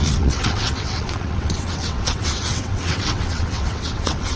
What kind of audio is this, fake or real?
fake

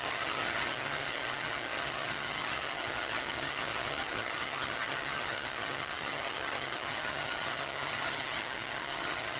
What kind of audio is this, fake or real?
fake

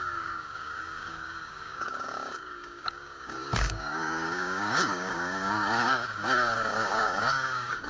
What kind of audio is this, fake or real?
fake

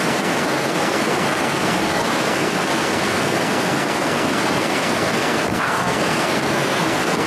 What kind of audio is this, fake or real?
fake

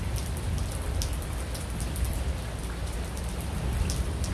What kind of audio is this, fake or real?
real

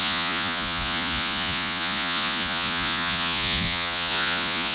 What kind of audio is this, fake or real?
fake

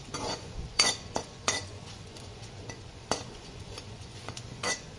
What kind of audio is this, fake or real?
fake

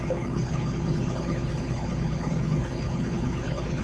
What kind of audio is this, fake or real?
fake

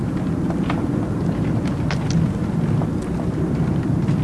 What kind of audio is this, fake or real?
real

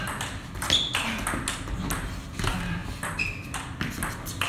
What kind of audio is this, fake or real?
real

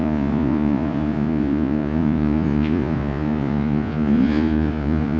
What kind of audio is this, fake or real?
fake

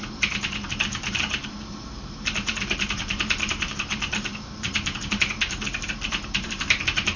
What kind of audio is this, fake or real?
fake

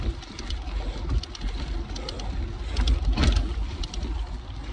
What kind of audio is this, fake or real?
real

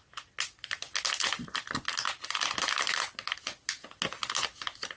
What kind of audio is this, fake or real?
real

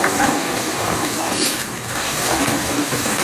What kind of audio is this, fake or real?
fake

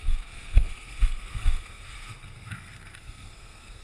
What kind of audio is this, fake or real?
fake